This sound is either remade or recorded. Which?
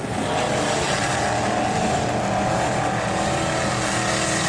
recorded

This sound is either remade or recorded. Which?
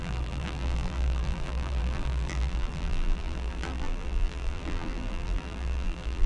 remade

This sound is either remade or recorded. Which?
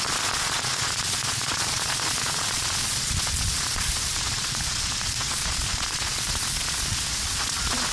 remade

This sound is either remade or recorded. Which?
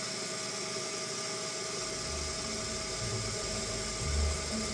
recorded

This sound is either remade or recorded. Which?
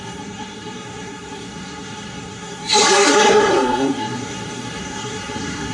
remade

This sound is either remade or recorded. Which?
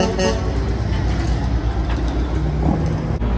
recorded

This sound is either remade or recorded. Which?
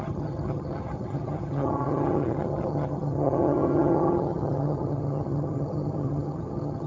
remade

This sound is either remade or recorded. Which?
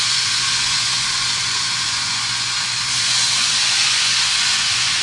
remade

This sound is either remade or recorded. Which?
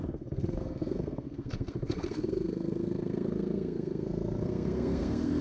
remade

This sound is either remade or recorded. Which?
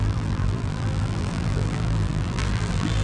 remade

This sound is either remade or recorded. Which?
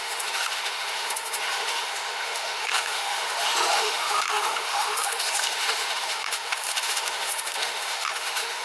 remade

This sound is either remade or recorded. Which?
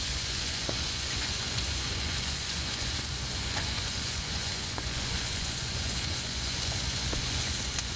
remade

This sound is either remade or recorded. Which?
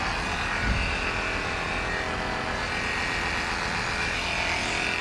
recorded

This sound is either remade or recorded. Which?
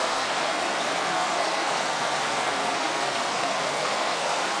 remade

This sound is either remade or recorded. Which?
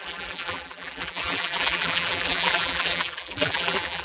remade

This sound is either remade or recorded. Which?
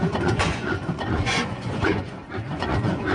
remade